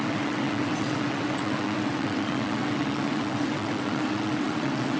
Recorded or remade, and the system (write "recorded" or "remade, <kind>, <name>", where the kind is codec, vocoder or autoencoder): remade, vocoder, WaveNeXt